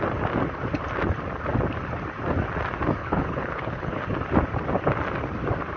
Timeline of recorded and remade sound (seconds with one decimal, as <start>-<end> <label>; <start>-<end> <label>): 0.0-3.0 recorded; 3.0-4.0 remade; 4.0-5.8 recorded